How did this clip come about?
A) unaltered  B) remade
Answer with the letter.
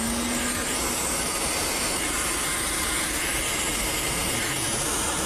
A